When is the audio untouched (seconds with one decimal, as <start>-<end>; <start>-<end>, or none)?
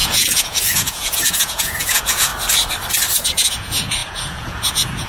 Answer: 2.3-3.2